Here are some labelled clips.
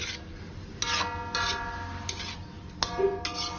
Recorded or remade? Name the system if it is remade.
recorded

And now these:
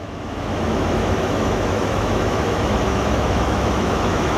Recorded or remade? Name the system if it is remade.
remade, autoencoder, DAC-VAE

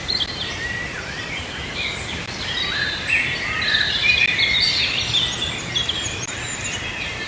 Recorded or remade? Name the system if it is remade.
recorded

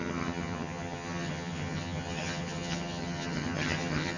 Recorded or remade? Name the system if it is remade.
remade, vocoder, HiFi-GAN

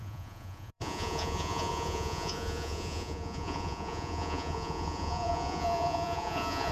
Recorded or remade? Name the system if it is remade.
remade, vocoder, Vocos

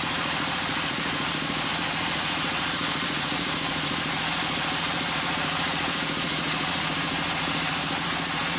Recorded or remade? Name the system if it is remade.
remade, vocoder, Vocos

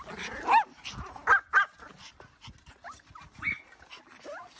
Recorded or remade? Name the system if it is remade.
recorded